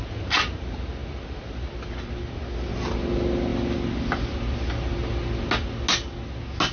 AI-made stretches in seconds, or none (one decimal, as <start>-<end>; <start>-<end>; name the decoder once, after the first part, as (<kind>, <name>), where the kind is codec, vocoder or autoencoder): none

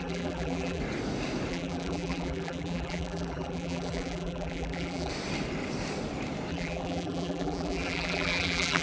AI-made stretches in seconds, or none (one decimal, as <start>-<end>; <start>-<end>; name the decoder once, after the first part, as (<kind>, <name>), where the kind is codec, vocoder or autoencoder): 0.0-0.8 (vocoder, BigVGAN v2); 1.5-5.1; 6.5-8.8

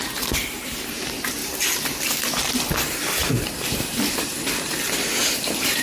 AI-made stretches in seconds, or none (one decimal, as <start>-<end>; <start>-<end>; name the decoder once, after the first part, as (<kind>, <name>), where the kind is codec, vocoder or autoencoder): 0.0-1.4 (vocoder, BigVGAN v2); 3.3-4.3; 5.2-5.8

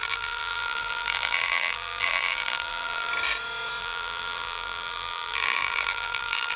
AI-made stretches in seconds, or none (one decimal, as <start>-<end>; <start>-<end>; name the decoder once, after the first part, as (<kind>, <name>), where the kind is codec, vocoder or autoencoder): 0.0-3.1 (vocoder, BigVGAN v2); 3.8-6.6